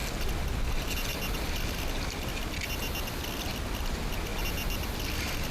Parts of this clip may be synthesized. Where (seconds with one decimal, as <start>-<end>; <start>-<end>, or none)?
none